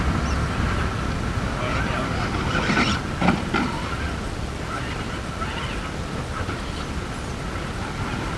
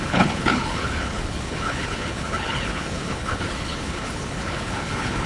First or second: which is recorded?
first